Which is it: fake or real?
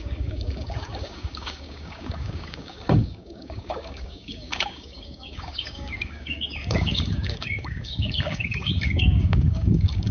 fake